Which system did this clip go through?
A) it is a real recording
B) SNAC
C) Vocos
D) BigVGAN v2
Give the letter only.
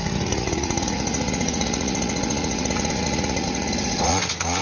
C